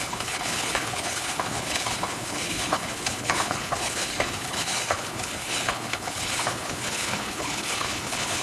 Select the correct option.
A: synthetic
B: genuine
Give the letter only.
A